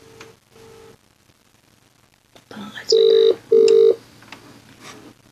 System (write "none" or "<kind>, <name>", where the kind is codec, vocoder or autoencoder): none